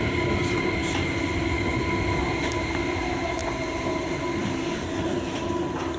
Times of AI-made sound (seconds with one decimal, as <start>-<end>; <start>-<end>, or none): none